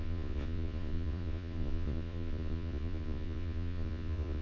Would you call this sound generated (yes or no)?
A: yes